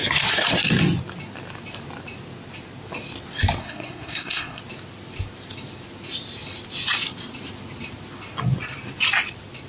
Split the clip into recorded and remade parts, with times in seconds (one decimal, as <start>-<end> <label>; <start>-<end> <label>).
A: 0.0-3.6 recorded; 3.6-4.6 remade; 4.6-9.7 recorded